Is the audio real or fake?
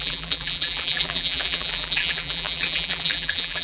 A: fake